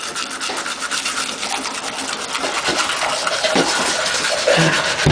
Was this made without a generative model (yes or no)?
yes